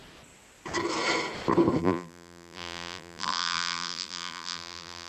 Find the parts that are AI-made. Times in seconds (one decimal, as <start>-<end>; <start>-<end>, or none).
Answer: 1.8-5.1